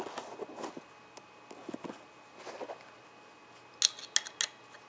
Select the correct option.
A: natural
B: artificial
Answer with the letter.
A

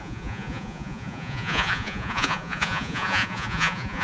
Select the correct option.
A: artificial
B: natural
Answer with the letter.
A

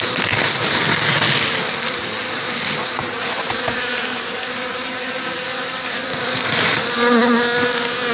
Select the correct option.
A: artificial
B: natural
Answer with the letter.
B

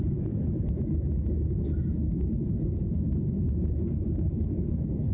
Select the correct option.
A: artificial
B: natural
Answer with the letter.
A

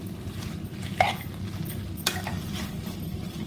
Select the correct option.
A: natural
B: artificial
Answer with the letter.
A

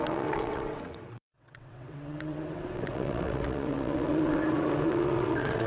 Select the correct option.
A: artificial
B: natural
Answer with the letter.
A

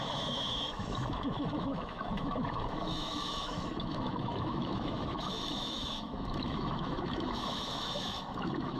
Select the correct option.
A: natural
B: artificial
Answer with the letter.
B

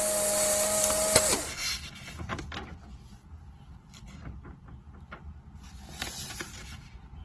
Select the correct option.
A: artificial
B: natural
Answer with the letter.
B